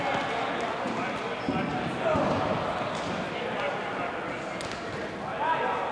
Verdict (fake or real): real